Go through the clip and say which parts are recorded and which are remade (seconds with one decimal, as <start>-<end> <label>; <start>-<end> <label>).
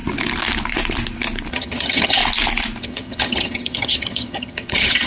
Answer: 0.0-1.5 recorded; 1.5-2.2 remade; 2.2-2.8 recorded; 2.8-5.1 remade